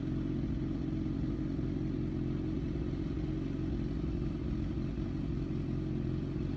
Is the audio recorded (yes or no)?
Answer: yes